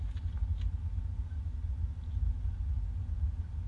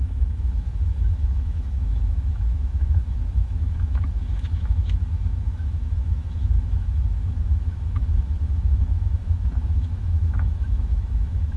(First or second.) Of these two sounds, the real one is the first